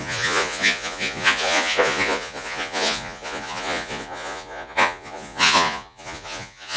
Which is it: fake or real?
fake